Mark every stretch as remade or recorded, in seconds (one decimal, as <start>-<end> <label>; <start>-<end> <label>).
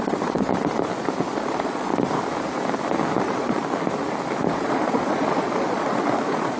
0.0-0.5 remade; 0.5-1.2 recorded; 1.2-1.9 remade; 1.9-3.2 recorded; 3.2-3.6 remade; 3.6-4.5 recorded; 4.5-6.6 remade